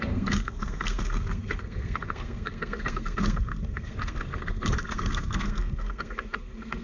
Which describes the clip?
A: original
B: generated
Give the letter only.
B